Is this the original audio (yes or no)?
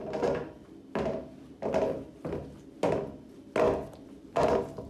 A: yes